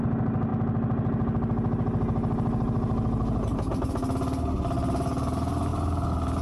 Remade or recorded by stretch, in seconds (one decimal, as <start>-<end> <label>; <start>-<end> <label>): 0.0-6.4 recorded